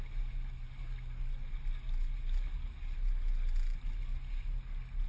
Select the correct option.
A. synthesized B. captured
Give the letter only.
B